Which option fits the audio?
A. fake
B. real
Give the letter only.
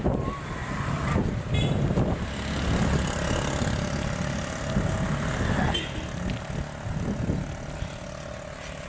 B